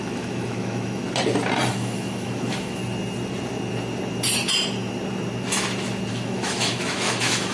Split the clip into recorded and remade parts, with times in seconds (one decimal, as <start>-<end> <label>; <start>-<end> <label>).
0.0-1.0 remade; 1.0-1.7 recorded; 1.7-2.8 remade; 2.8-6.1 recorded; 6.1-7.5 remade